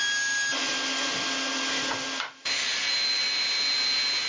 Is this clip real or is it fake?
real